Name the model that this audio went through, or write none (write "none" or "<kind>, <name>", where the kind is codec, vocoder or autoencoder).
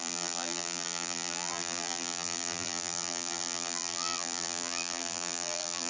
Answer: vocoder, BigVGAN v2